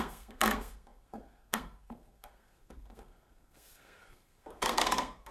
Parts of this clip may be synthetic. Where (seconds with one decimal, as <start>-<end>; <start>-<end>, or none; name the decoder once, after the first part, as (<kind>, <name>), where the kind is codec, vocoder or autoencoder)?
0.0-5.3 (codec, SNAC)